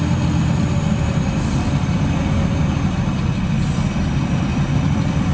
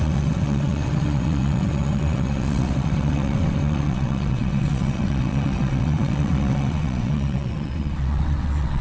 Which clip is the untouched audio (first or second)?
first